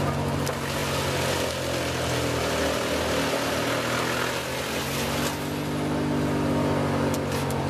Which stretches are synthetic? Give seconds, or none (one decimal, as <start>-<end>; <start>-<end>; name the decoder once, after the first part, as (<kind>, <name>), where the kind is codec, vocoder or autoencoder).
none